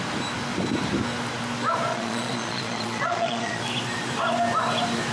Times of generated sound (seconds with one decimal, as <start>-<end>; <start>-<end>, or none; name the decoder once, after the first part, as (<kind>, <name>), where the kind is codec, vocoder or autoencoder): 1.9-3.6 (vocoder, Vocos)